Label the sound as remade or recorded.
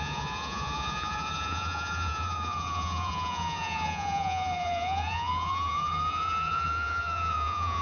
remade